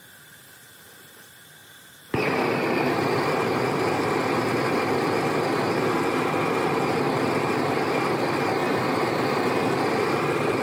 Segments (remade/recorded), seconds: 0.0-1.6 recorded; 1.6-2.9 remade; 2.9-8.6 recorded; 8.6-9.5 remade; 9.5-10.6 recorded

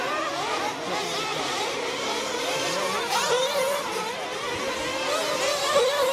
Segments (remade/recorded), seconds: 0.0-1.3 recorded; 1.3-2.8 remade; 2.8-6.1 recorded